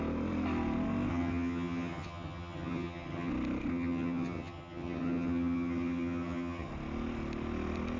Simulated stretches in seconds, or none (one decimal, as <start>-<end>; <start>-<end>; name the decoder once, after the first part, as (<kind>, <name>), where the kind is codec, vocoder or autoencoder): 1.1-3.3 (vocoder, HiFi-GAN); 3.7-6.7